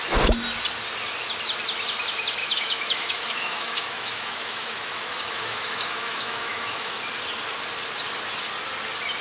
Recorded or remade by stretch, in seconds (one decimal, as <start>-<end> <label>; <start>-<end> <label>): 0.0-2.4 recorded; 2.4-7.0 remade; 7.0-9.2 recorded